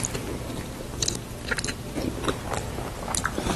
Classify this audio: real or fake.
real